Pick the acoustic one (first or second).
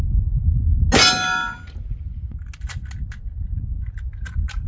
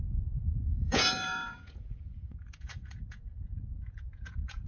first